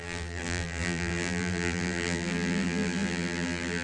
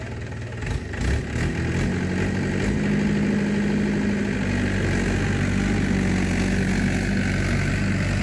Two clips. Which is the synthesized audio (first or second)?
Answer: first